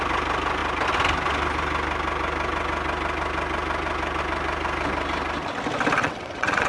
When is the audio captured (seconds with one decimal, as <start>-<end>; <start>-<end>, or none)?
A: 0.0-6.0

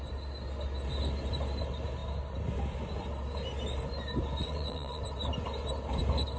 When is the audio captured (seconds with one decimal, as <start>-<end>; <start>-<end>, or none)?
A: 0.0-4.4; 5.0-6.4

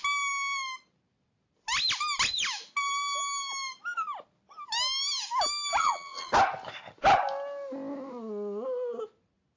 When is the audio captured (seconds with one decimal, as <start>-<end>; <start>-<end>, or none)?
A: 0.0-5.8; 6.3-9.6

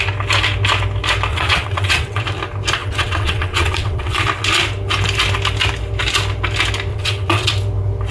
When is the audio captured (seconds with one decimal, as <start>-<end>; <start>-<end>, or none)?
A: 0.0-1.3; 2.2-2.8; 4.2-6.9; 7.5-8.1

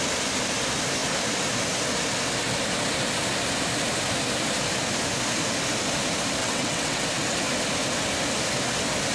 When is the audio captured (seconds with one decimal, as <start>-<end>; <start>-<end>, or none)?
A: 0.0-6.4; 7.0-9.1

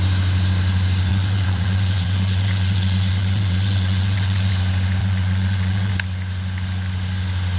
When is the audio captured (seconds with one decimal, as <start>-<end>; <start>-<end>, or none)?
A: 0.0-1.1; 4.5-5.0; 5.9-7.6

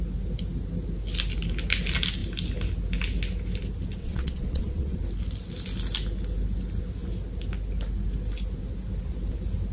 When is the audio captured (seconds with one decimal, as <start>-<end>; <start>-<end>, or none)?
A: 0.0-4.0; 5.0-9.7

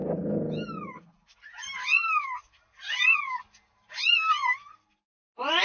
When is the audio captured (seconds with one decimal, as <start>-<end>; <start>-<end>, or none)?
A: 0.0-5.6